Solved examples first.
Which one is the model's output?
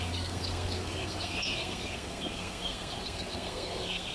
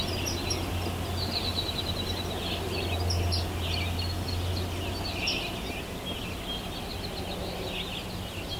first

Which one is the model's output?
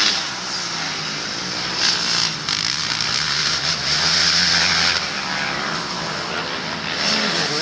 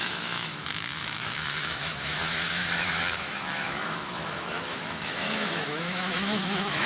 second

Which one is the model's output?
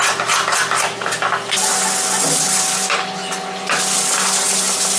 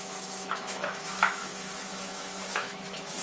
second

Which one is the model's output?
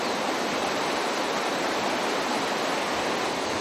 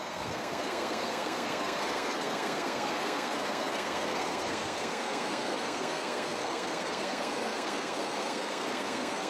second